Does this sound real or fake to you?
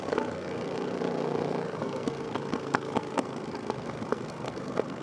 fake